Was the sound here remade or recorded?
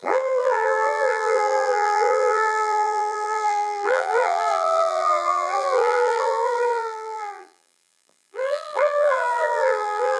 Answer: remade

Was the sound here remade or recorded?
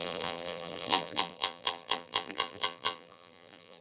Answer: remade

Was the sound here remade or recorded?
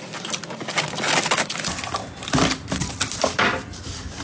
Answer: remade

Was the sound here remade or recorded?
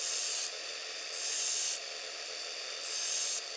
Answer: remade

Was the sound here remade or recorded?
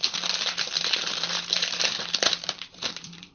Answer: remade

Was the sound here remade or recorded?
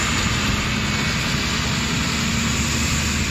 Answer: recorded